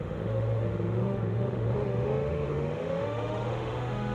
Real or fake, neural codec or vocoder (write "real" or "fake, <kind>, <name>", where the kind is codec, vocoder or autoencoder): fake, autoencoder, DAC-VAE